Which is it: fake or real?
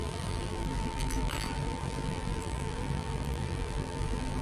fake